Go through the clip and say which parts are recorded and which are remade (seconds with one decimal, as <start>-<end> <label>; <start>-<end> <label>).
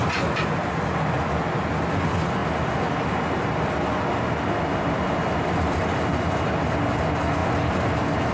0.0-8.3 recorded